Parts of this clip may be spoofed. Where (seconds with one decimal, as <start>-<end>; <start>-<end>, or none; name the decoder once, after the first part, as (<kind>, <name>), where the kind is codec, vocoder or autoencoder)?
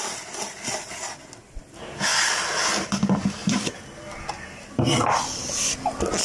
none